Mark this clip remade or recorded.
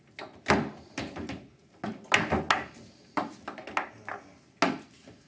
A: recorded